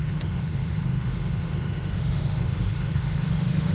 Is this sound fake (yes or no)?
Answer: yes